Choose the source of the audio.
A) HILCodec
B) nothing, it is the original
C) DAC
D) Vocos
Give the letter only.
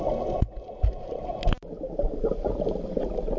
B